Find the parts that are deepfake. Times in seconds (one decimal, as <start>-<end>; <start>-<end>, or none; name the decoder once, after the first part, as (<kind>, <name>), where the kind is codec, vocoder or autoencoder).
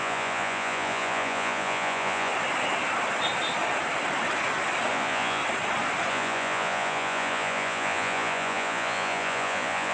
0.0-2.3 (vocoder, Vocos); 4.9-5.4; 6.1-9.9